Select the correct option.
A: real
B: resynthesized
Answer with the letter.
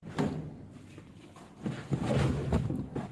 A